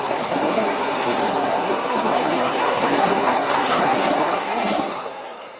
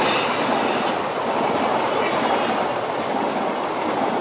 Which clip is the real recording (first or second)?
second